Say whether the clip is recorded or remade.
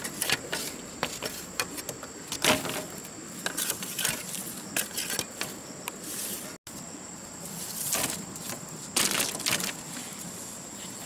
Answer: recorded